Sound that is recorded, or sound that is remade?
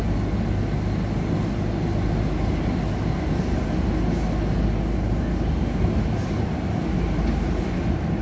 recorded